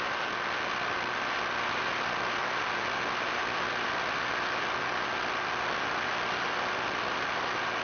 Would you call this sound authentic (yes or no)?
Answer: yes